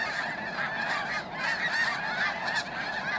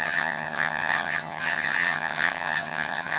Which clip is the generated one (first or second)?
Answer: second